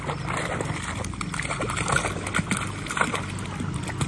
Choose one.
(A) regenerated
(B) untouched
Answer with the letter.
B